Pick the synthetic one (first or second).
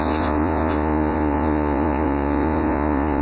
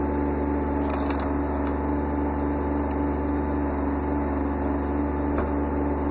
first